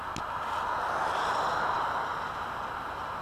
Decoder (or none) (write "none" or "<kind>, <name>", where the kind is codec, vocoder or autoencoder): none